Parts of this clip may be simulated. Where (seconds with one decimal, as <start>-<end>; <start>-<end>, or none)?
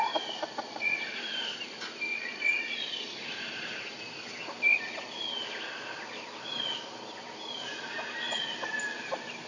0.7-1.2; 2.1-3.2